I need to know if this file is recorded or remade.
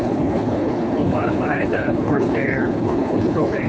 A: remade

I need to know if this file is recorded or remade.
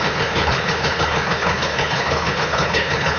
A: remade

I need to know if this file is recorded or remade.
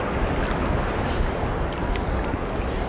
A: recorded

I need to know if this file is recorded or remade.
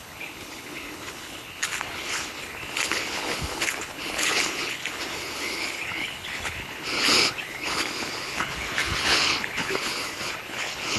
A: remade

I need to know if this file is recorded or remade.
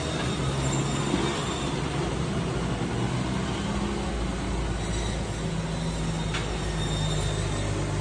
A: recorded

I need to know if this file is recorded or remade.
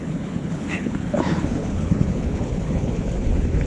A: remade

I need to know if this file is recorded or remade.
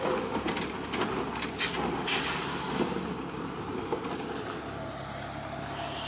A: recorded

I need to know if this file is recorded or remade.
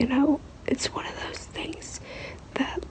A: recorded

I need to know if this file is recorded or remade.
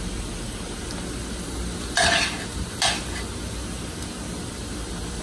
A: recorded